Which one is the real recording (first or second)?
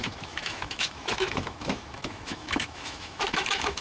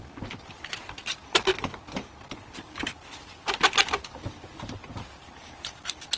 second